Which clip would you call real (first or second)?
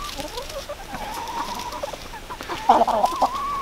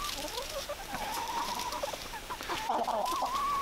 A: first